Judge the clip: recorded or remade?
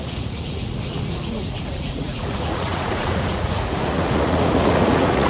remade